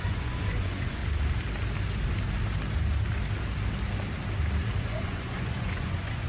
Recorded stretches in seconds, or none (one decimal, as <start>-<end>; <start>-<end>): 1.0-4.8

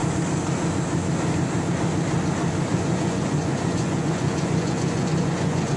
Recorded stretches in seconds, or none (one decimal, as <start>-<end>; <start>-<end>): 0.0-2.7

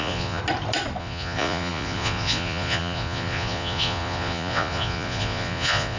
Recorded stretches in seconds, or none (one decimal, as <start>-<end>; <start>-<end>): 0.4-1.0

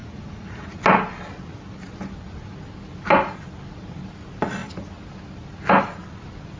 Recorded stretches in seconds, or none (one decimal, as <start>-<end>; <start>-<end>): 0.8-6.6